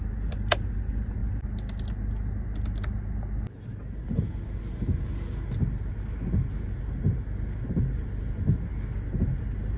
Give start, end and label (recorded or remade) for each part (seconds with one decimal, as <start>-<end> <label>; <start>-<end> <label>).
0.0-9.8 recorded

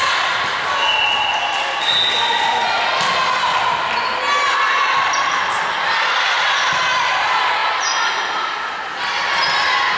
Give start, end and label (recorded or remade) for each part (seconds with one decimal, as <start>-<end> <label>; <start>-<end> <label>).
0.0-10.0 recorded

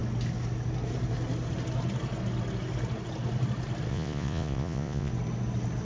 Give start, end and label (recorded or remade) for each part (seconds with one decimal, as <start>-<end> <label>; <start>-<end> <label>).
0.0-3.9 recorded; 3.9-5.1 remade; 5.1-5.8 recorded

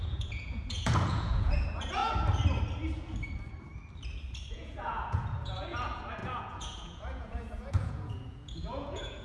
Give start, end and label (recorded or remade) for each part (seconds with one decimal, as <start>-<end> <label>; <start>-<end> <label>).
0.0-2.0 remade; 2.0-4.5 recorded; 4.5-9.2 remade

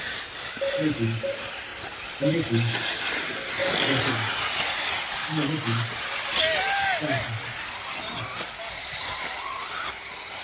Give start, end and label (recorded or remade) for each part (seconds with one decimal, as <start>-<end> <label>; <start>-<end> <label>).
0.0-10.4 recorded

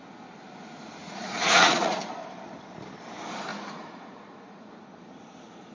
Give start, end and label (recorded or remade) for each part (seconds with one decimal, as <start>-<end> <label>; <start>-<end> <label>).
0.0-1.0 recorded; 1.0-2.0 remade; 2.0-3.5 recorded; 3.5-4.7 remade; 4.7-5.7 recorded